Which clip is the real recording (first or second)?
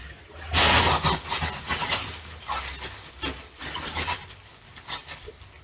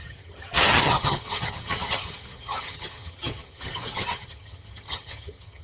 first